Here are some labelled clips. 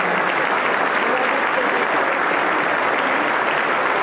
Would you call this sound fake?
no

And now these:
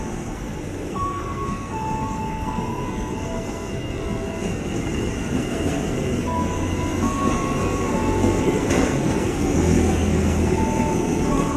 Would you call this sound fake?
yes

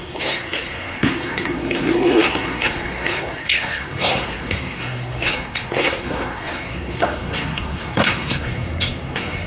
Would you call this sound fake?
yes